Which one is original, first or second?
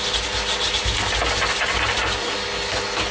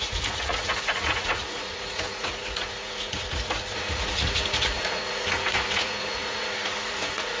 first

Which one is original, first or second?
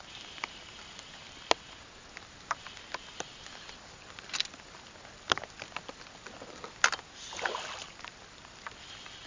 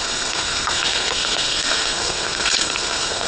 first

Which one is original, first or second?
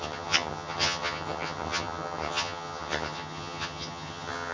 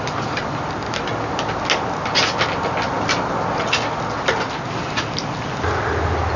second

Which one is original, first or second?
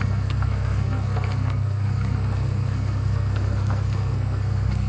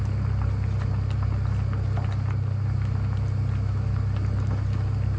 second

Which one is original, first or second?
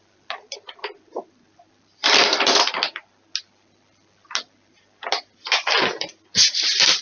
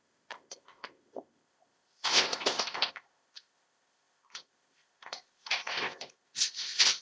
first